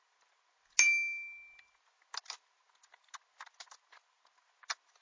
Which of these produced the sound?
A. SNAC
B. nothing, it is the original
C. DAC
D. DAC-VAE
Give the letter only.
B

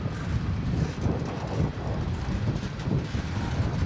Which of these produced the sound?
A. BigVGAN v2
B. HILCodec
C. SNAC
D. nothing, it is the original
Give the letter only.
A